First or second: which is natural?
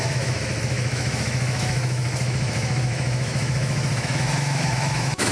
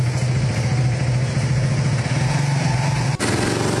second